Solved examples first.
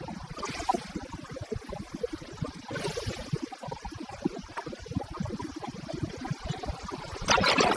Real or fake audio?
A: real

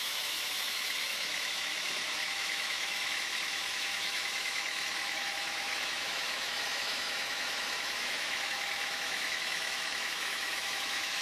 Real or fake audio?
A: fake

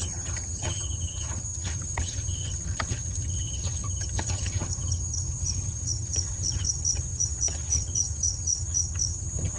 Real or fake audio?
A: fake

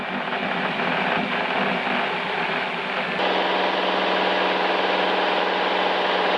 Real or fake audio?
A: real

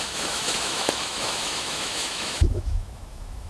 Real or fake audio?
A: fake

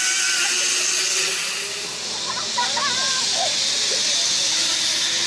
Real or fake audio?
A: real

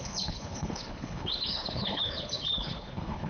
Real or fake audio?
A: fake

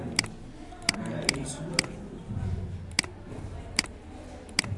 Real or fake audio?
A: real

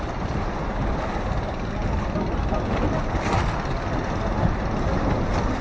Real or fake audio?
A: real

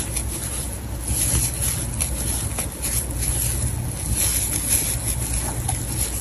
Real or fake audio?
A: real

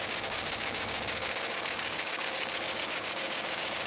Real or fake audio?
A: fake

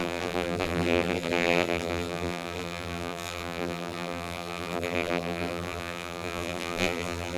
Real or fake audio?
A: fake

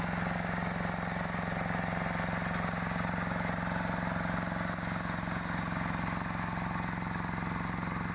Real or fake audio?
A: real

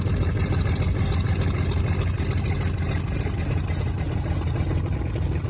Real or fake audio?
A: real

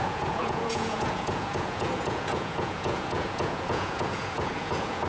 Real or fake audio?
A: fake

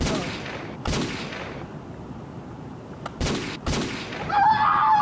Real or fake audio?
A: real